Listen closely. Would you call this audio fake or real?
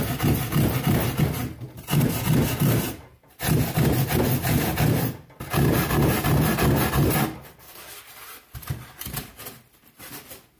real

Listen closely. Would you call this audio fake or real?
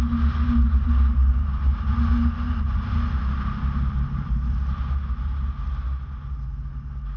real